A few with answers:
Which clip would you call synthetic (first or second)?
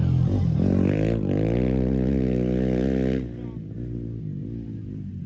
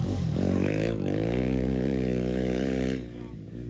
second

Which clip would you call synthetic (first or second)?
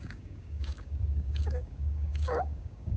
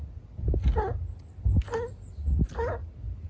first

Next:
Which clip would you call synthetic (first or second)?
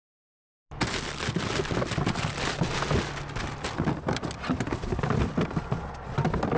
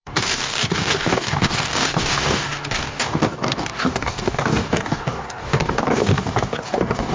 second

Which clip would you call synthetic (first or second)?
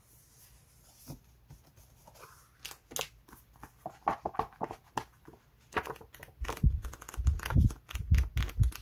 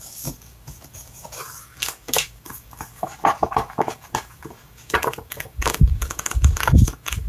second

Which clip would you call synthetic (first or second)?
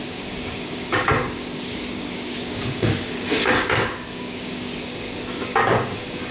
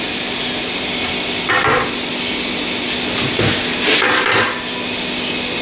first